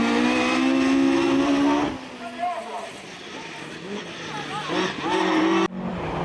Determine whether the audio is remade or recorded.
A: recorded